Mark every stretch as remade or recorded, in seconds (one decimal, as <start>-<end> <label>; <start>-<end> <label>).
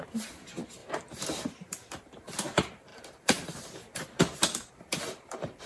0.0-5.7 remade